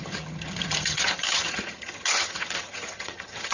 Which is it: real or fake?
fake